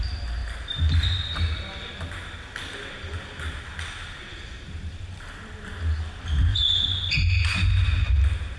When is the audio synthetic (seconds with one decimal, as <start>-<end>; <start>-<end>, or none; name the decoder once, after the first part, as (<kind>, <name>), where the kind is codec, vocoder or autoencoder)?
6.5-8.1 (vocoder, Vocos)